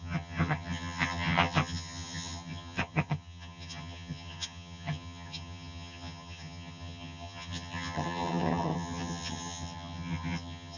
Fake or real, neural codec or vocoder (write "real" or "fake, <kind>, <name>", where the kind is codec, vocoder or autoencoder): fake, vocoder, HiFi-GAN